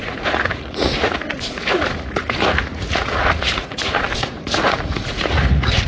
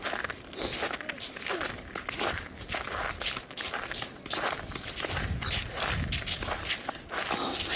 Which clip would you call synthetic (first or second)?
first